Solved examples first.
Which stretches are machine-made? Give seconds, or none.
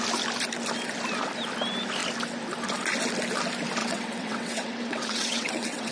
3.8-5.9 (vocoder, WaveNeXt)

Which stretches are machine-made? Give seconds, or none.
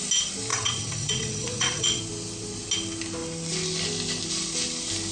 0.5-2.0 (vocoder, WaveNeXt)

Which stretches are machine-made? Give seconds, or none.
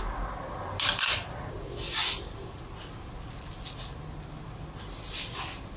none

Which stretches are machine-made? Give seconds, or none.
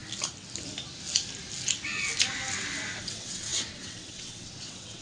3.0-5.0 (vocoder, WaveNeXt)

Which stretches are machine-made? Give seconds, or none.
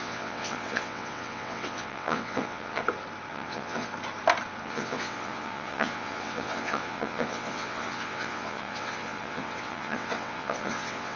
0.0-2.8 (vocoder, WaveNeXt); 3.3-3.9; 4.6-11.2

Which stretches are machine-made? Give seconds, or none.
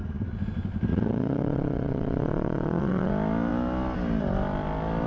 0.9-3.1 (vocoder, WaveNeXt)